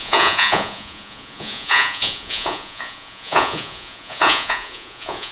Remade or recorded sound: remade